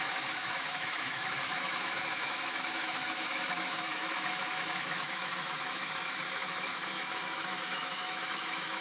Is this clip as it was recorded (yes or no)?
no